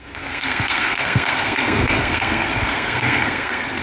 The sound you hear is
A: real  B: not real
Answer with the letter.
B